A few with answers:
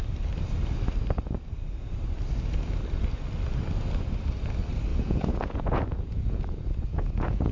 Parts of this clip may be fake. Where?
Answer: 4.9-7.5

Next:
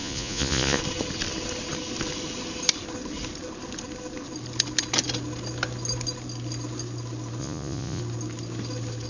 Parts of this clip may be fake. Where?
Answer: 0.0-0.8; 7.4-8.0